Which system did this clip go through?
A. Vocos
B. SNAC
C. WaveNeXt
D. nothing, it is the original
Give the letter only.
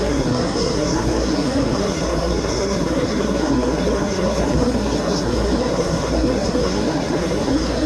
B